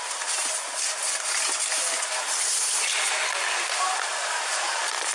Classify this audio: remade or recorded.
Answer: recorded